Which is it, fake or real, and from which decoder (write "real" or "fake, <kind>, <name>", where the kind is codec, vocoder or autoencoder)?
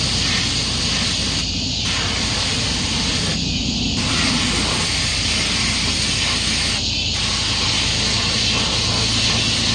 real